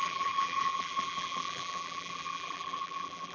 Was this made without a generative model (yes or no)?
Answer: no